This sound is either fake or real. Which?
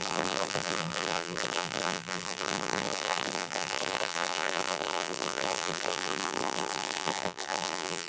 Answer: fake